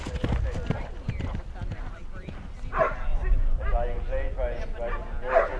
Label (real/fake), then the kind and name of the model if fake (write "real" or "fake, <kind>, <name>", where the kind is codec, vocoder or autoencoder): real